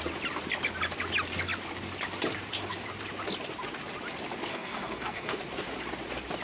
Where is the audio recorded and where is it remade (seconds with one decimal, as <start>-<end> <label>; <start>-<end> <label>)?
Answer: 0.0-4.5 recorded; 4.5-5.4 remade; 5.4-6.4 recorded